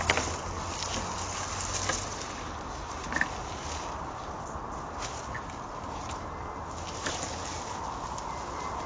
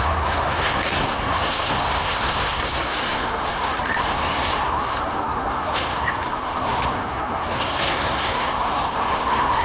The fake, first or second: second